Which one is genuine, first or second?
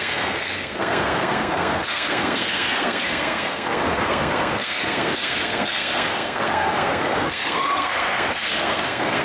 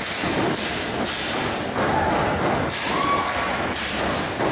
second